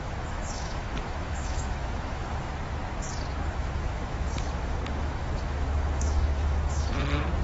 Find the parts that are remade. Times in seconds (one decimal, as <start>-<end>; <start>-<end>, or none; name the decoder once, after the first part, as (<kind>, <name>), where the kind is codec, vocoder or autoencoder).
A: 0.0-2.5 (autoencoder, DAC-VAE); 3.5-7.4